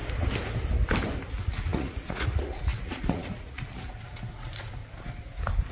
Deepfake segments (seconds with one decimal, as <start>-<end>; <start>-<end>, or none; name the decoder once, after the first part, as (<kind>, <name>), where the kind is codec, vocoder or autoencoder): 1.3-4.8 (vocoder, Vocos)